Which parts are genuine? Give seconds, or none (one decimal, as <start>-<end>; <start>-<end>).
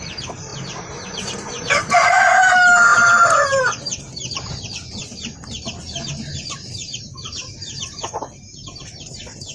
none